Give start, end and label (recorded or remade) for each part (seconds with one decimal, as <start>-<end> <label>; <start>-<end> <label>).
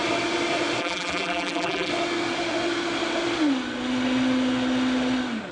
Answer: 0.0-0.8 recorded; 0.8-1.9 remade; 1.9-5.5 recorded